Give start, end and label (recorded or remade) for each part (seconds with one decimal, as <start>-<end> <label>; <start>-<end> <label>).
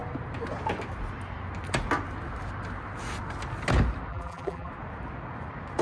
0.0-4.1 recorded; 4.1-4.7 remade; 4.7-5.8 recorded